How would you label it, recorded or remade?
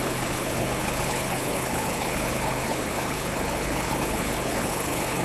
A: remade